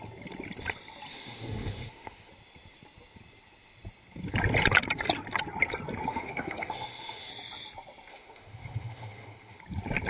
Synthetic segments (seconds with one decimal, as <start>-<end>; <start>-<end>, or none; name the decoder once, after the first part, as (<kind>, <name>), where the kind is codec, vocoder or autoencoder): 1.1-2.3 (autoencoder, DAC-VAE); 6.1-7.3; 8.1-9.6